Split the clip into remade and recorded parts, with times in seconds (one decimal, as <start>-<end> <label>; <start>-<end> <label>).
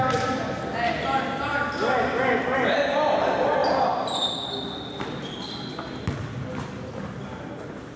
0.0-8.0 recorded